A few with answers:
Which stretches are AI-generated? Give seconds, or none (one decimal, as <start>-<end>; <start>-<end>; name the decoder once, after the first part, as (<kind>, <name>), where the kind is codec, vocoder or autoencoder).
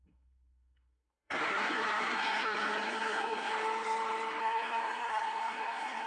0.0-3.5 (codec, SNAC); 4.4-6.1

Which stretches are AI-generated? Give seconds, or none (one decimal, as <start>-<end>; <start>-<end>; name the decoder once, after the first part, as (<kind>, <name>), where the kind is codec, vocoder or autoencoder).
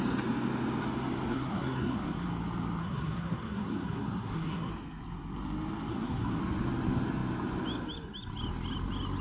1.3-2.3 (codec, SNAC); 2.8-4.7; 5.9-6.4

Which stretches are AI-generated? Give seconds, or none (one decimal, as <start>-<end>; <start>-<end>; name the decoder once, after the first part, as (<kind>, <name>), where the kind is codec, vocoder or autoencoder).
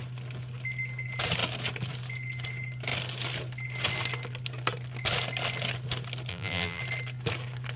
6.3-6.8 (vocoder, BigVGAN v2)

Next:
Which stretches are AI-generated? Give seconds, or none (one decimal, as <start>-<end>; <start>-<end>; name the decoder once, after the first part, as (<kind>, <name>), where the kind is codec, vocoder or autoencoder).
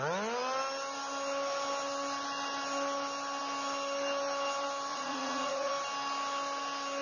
4.9-5.7 (vocoder, Vocos)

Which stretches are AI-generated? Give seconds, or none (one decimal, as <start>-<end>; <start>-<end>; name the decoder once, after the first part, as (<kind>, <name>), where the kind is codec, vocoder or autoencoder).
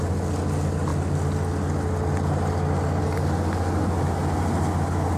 none